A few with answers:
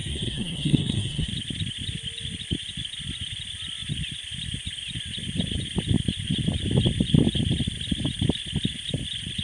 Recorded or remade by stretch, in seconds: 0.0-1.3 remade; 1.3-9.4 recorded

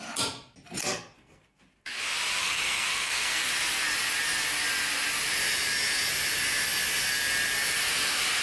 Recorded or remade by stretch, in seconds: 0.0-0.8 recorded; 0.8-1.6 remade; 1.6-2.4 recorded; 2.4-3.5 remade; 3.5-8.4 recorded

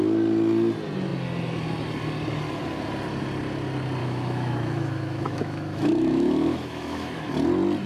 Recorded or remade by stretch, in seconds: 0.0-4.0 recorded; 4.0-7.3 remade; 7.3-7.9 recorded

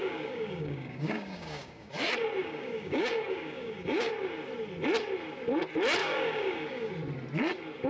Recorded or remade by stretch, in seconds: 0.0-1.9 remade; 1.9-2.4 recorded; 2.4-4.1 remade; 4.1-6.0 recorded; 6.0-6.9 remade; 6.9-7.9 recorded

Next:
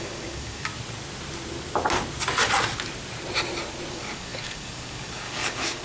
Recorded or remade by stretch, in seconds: 0.0-0.7 remade; 0.7-3.9 recorded; 3.9-5.8 remade

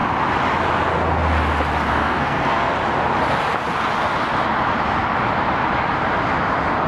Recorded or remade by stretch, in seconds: 0.0-1.9 recorded; 1.9-2.7 remade; 2.7-6.9 recorded